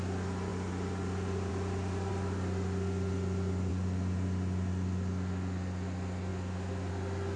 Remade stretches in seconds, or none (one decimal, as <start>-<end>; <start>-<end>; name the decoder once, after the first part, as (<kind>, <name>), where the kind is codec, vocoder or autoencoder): none